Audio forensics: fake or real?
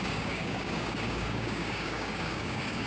fake